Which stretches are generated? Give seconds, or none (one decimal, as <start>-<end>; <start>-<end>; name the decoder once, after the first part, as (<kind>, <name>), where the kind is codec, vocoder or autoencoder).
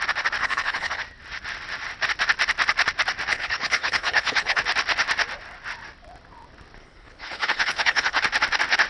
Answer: 0.4-1.0 (codec, HILCodec); 3.3-4.6; 6.8-8.2